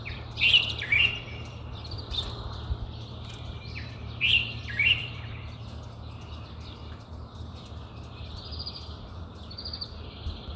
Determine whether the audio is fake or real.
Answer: fake